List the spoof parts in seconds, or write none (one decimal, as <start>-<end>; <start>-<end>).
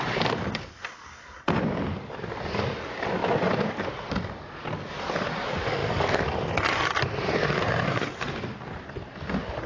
0.0-9.7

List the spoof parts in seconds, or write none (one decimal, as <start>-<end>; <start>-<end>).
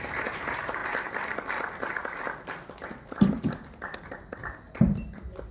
0.0-0.8; 4.1-5.5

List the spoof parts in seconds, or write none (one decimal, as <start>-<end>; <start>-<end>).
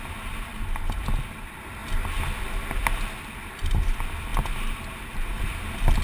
0.0-1.8; 3.2-4.3; 5.1-6.0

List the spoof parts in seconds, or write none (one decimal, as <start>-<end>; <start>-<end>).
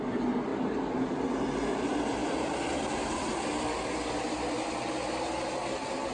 0.5-1.0